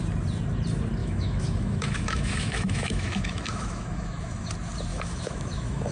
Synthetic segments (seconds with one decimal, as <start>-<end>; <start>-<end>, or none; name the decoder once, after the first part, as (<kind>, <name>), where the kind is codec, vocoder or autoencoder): 1.0-4.5 (autoencoder, DAC-VAE); 4.9-5.9